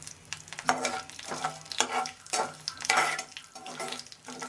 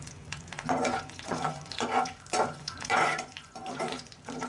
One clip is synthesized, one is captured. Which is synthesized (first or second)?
second